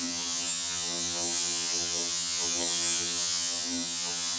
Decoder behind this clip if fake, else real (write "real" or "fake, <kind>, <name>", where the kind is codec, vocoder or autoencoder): fake, vocoder, HiFi-GAN